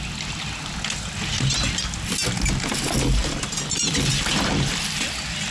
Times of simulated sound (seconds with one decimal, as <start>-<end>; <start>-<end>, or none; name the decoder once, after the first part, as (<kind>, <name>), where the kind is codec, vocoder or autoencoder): 3.2-4.7 (vocoder, BigVGAN v2)